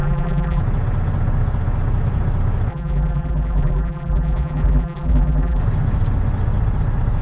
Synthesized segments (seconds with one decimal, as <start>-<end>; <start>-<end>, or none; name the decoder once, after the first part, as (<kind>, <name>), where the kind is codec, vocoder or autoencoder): 0.0-0.6 (vocoder, BigVGAN v2); 2.7-5.6